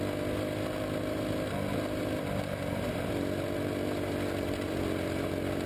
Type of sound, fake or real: real